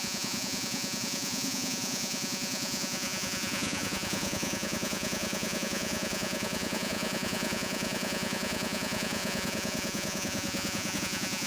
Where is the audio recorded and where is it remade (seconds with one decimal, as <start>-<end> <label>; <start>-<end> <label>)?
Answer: 0.0-11.5 remade